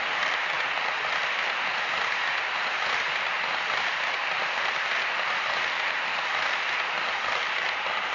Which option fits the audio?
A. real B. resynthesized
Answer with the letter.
B